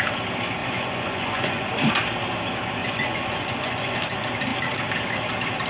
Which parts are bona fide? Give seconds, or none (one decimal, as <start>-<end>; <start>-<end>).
0.0-0.6; 1.9-2.8; 4.0-5.7